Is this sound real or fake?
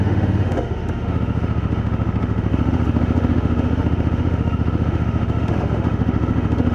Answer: fake